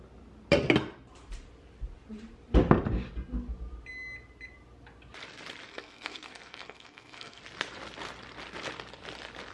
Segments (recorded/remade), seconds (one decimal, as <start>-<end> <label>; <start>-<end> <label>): 0.0-5.7 recorded; 5.7-7.4 remade; 7.4-9.5 recorded